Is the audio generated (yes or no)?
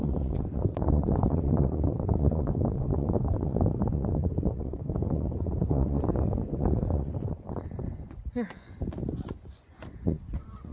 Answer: yes